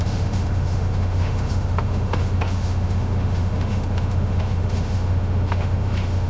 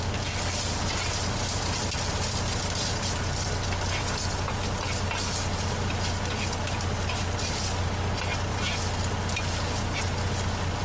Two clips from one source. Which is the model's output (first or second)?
first